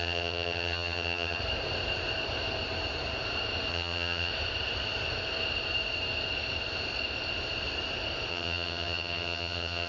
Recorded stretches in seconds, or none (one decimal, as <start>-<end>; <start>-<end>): 1.4-3.7; 4.3-8.3